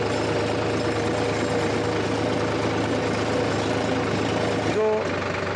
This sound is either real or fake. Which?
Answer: real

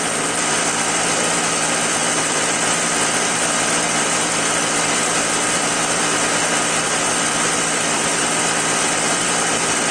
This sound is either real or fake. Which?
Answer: fake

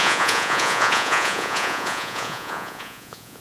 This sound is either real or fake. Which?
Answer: fake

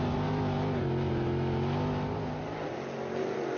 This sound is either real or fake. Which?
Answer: real